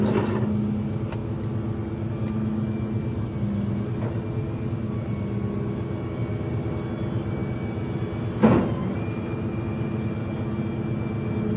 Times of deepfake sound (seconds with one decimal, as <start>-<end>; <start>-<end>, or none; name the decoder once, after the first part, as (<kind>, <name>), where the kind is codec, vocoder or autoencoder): none